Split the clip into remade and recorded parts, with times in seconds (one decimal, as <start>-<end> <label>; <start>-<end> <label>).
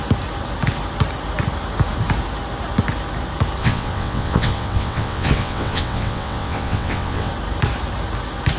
0.0-3.6 recorded; 3.6-7.3 remade; 7.3-8.6 recorded